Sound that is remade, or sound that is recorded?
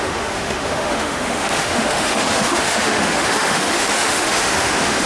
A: remade